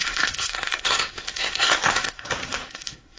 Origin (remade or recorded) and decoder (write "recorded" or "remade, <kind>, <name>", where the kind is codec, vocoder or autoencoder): remade, codec, SNAC